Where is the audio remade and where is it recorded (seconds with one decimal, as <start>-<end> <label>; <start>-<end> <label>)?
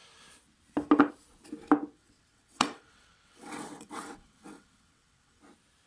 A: 0.0-1.9 recorded; 1.9-5.4 remade; 5.4-5.9 recorded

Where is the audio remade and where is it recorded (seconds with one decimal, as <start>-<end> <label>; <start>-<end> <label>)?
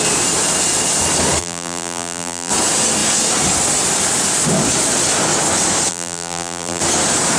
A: 0.0-1.4 recorded; 1.4-2.5 remade; 2.5-5.9 recorded; 5.9-6.8 remade; 6.8-7.4 recorded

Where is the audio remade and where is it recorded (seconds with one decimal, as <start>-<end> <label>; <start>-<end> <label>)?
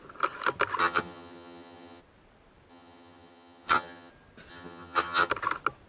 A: 0.0-0.8 recorded; 0.8-2.0 remade; 2.0-2.7 recorded; 2.7-4.1 remade; 4.1-4.5 recorded; 4.5-5.3 remade; 5.3-5.9 recorded